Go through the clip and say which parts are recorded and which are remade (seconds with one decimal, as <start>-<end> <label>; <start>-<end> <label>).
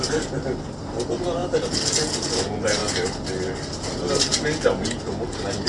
0.0-5.7 recorded